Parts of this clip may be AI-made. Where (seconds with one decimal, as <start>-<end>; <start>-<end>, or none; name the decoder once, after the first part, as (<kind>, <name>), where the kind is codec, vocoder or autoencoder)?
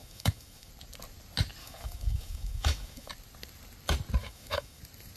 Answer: 0.0-0.7 (autoencoder, DAC-VAE); 1.6-3.1; 4.2-4.8